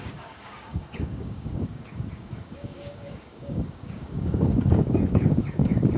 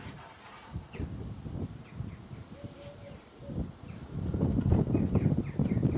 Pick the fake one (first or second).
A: first